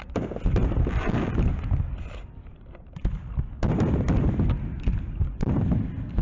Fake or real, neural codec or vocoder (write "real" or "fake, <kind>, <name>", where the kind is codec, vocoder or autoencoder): real